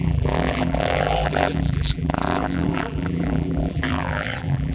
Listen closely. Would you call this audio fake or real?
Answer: fake